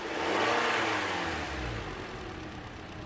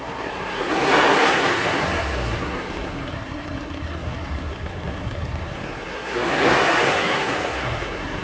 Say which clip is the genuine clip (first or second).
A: first